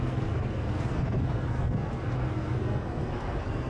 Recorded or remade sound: remade